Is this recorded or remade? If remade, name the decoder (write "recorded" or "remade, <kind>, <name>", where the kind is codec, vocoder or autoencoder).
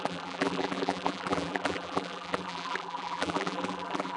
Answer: remade, vocoder, BigVGAN v2